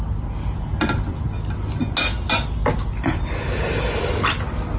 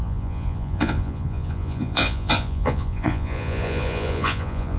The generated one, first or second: second